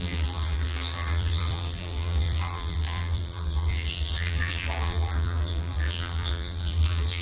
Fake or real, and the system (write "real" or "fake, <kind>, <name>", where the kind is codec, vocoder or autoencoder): fake, vocoder, BigVGAN v2